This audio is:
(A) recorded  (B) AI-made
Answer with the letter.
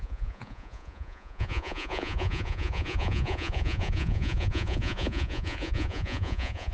B